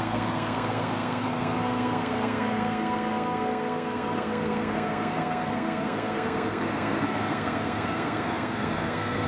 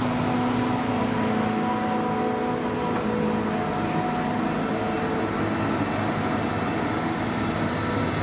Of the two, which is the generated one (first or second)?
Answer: first